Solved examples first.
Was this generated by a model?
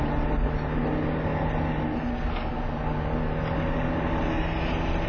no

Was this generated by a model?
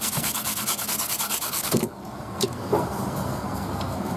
yes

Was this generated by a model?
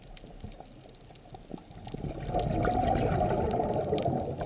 no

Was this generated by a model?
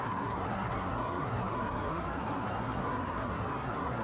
yes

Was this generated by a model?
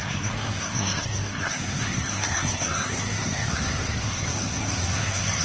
yes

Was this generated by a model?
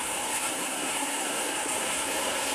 yes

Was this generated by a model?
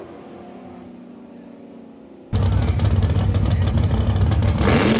no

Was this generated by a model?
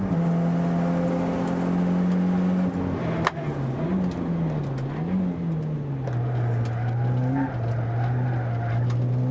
no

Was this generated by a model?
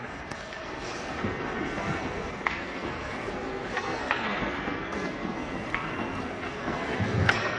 yes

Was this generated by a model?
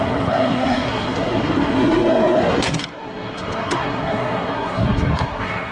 yes